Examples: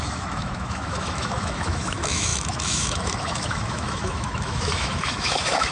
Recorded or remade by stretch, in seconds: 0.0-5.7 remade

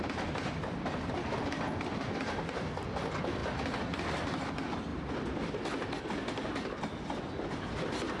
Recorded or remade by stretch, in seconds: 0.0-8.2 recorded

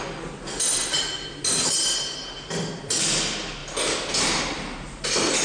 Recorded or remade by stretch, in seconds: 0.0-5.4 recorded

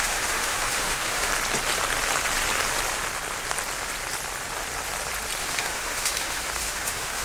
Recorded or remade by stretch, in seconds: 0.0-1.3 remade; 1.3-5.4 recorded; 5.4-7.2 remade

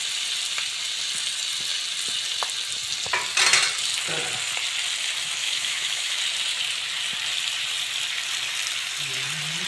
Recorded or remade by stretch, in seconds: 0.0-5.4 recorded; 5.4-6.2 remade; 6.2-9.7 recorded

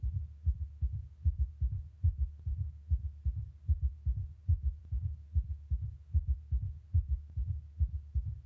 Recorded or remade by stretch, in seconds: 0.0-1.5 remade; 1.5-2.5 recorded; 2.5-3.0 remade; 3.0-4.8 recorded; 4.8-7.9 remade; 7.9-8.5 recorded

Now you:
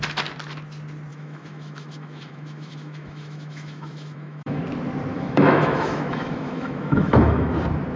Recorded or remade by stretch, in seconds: 0.0-1.1 recorded; 1.1-4.6 remade; 4.6-5.1 recorded; 5.1-7.5 remade; 7.5-8.0 recorded

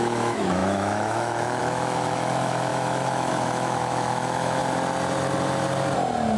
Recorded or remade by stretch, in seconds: 0.0-4.6 remade; 4.6-6.4 recorded